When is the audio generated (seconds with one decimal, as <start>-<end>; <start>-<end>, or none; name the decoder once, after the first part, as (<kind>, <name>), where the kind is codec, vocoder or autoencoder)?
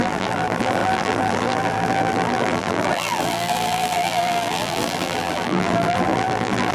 0.0-6.7 (vocoder, BigVGAN v2)